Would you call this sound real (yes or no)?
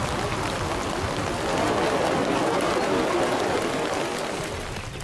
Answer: yes